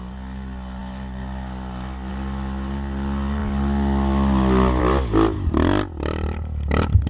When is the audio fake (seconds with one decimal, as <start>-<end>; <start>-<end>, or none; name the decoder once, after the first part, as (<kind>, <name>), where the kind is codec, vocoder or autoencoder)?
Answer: none